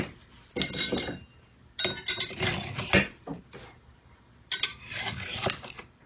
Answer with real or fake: real